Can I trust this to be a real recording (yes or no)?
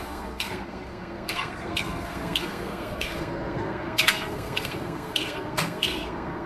no